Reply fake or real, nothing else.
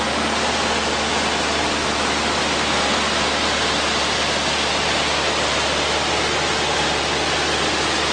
real